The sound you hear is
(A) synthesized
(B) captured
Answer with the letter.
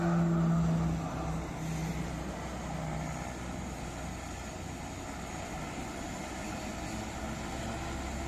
B